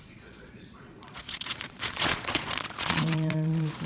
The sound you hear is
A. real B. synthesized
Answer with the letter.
B